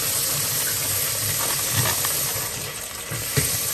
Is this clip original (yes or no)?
yes